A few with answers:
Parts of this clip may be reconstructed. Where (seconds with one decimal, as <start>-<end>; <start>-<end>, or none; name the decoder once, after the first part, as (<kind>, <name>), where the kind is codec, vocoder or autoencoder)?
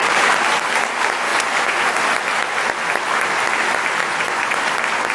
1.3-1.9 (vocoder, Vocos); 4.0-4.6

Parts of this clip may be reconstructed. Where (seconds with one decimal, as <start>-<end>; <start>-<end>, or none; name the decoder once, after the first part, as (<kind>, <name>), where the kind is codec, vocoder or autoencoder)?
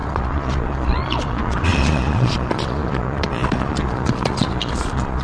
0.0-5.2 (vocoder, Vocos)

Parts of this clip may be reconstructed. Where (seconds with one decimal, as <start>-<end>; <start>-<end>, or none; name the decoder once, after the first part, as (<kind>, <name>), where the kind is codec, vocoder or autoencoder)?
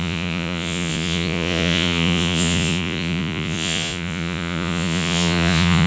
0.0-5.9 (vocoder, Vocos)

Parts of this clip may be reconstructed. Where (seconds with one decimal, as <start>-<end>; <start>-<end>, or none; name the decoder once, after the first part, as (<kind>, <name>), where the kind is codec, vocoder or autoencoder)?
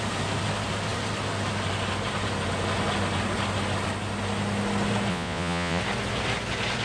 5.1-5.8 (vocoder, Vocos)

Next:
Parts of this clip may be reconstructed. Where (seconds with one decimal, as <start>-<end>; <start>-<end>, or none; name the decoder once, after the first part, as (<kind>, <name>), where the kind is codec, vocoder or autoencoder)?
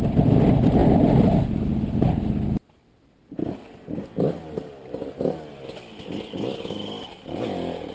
none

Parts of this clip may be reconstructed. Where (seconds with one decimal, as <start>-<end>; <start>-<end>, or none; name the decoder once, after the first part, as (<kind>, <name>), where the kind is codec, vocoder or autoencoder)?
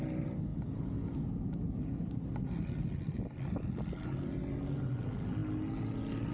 none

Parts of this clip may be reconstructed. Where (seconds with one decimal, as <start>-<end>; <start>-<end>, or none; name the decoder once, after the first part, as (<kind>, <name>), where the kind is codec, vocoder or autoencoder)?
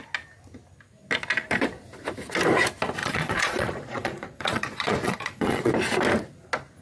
3.0-5.7 (vocoder, Vocos)